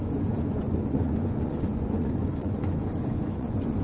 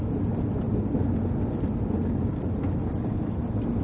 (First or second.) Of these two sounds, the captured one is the second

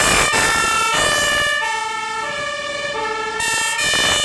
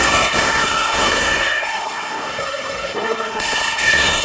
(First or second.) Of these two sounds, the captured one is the first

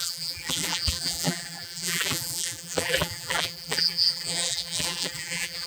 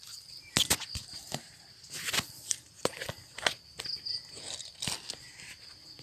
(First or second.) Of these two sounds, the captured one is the second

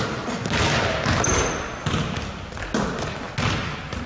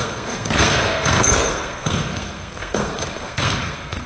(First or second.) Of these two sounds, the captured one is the first